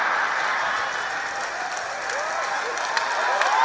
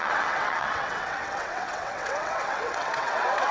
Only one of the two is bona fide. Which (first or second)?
first